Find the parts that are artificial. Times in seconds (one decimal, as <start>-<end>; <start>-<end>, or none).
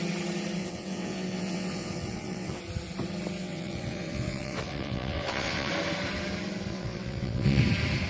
0.6-2.6; 3.4-5.7; 6.7-7.6